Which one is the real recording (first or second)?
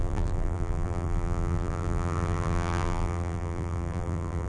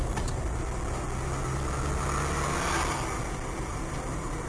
second